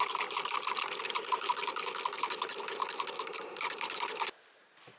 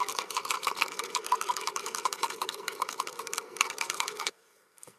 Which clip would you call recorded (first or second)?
first